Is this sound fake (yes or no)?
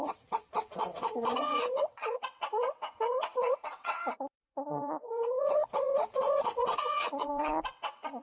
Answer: yes